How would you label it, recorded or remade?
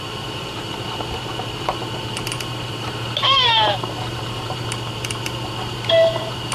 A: remade